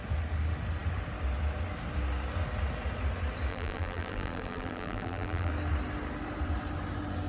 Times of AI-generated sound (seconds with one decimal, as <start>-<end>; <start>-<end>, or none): 3.5-5.5